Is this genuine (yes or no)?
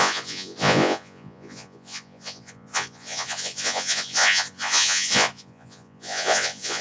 no